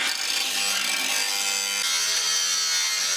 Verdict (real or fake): real